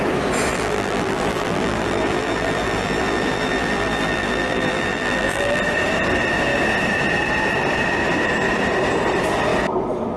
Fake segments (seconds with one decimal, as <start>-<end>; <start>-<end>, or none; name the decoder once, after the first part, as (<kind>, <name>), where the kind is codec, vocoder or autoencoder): 0.5-5.6 (vocoder, BigVGAN v2)